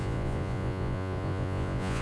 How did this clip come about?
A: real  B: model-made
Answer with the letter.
B